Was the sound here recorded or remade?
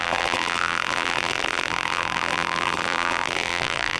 remade